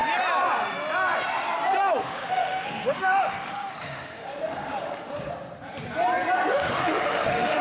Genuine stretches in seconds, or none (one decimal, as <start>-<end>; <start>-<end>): 0.0-2.0; 5.3-6.5